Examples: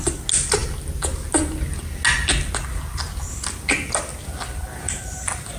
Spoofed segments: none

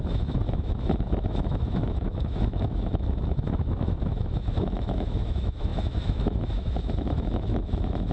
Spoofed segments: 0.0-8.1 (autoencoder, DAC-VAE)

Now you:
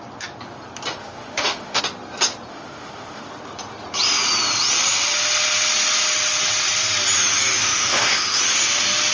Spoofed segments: 1.0-1.8 (autoencoder, DAC-VAE); 2.5-3.3; 7.6-8.4

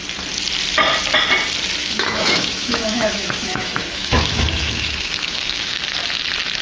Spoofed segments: 1.8-5.8 (autoencoder, DAC-VAE)

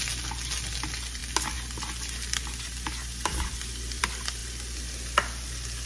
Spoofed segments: none